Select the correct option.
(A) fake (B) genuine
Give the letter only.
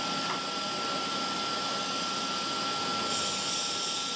B